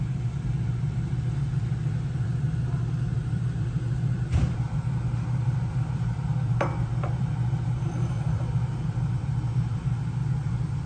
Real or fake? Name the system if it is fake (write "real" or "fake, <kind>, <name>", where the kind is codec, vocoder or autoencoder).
fake, vocoder, BigVGAN v2